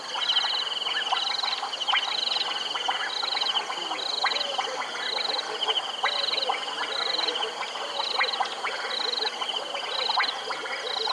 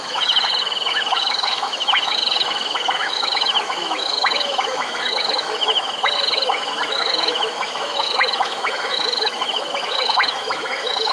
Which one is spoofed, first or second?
second